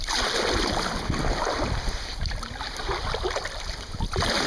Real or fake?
real